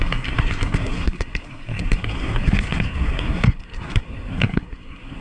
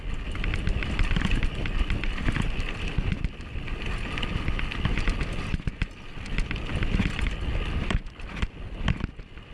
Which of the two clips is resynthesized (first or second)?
first